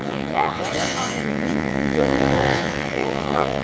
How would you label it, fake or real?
fake